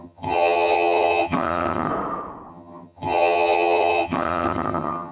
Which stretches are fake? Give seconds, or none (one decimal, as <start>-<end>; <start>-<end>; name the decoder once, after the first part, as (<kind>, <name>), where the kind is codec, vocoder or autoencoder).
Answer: 0.0-1.9 (vocoder, HiFi-GAN); 2.5-5.1